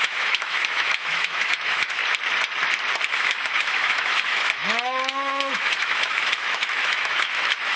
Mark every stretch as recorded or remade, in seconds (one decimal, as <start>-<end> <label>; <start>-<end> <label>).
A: 0.0-2.0 remade; 2.0-3.1 recorded; 3.1-7.8 remade